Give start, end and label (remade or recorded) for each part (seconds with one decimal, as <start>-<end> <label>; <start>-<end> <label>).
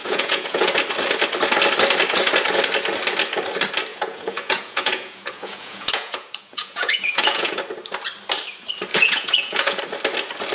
0.0-0.7 remade; 0.7-3.9 recorded; 3.9-7.6 remade; 7.6-8.9 recorded; 8.9-9.8 remade; 9.8-10.5 recorded